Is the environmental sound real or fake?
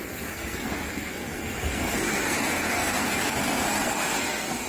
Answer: fake